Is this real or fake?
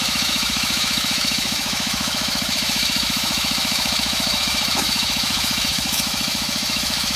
fake